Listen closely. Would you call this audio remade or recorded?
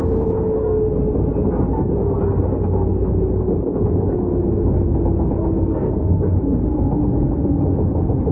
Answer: recorded